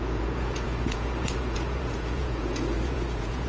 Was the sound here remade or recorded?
remade